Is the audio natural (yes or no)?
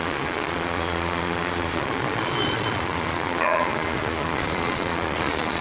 no